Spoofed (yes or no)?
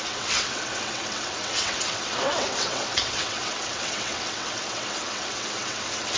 yes